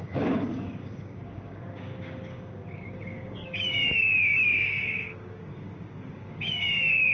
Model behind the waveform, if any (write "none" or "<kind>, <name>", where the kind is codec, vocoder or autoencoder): codec, DAC